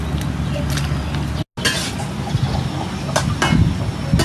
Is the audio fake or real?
real